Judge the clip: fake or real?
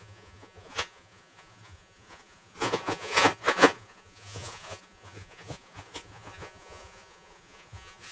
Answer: fake